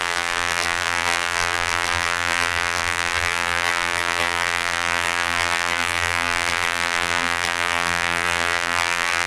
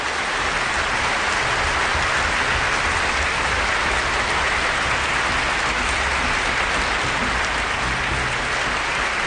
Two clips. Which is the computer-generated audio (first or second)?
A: first